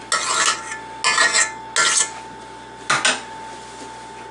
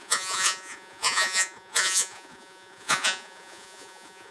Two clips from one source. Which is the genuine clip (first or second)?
first